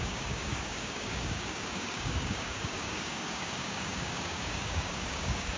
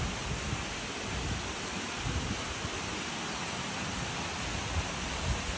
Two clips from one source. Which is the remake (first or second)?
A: first